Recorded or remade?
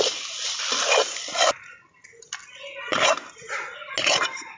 recorded